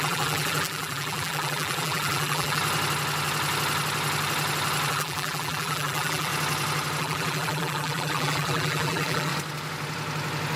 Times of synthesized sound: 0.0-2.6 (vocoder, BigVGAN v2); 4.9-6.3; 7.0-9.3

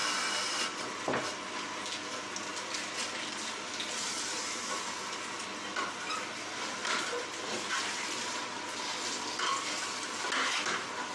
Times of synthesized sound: 0.0-1.8 (vocoder, BigVGAN v2); 2.5-4.7; 6.8-8.6

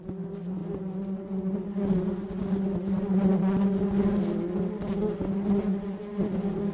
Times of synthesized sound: none

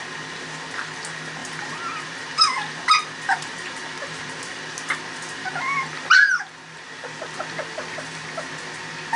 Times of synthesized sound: 1.4-5.6 (vocoder, BigVGAN v2)

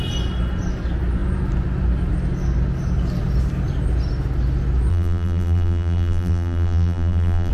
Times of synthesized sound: 4.9-7.5 (vocoder, BigVGAN v2)

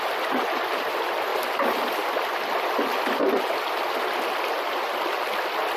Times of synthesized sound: none

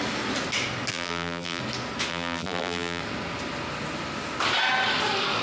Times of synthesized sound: 0.9-1.6 (vocoder, BigVGAN v2); 2.1-3.0

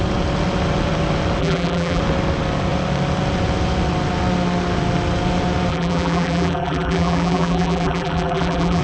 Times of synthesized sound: 1.4-2.0 (vocoder, BigVGAN v2); 5.7-8.8